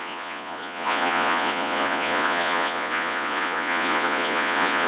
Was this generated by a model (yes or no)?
yes